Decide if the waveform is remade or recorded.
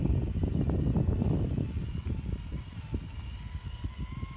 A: recorded